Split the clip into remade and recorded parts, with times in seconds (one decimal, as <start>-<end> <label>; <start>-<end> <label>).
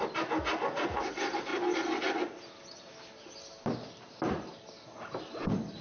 0.0-5.8 recorded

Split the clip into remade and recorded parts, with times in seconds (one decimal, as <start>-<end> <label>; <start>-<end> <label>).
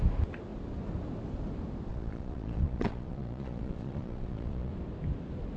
0.0-1.9 recorded; 1.9-4.7 remade; 4.7-5.6 recorded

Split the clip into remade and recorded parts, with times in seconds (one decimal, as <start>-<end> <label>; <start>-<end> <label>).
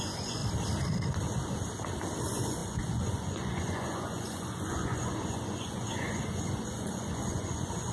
0.0-0.4 remade; 0.4-2.2 recorded; 2.2-7.9 remade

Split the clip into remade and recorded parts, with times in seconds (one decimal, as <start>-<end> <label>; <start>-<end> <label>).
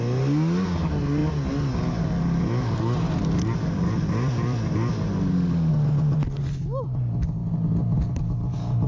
0.0-8.9 recorded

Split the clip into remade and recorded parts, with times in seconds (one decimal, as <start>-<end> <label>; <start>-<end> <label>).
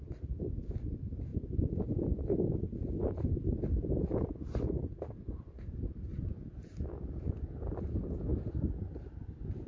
0.0-9.7 recorded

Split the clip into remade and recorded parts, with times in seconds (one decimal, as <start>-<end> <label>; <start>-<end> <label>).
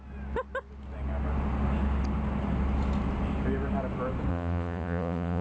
0.0-4.3 recorded; 4.3-5.4 remade